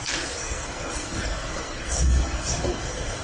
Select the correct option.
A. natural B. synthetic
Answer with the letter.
B